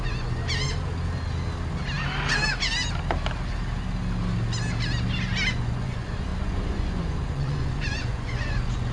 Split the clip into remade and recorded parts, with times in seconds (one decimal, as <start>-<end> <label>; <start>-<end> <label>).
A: 0.0-0.4 remade; 0.4-5.5 recorded; 5.5-8.9 remade